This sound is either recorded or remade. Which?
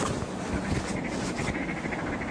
recorded